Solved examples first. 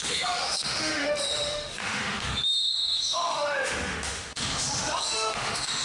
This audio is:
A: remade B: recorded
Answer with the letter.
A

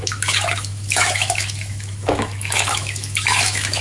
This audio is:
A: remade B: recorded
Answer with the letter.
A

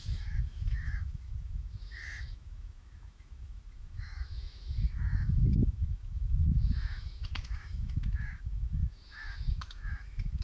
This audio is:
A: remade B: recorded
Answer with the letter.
A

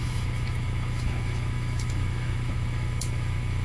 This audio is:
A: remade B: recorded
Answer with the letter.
A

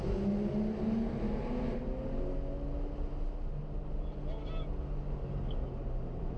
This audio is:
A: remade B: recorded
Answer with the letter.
B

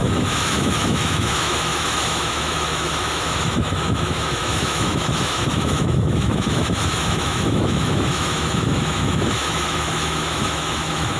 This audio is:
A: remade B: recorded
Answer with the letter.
A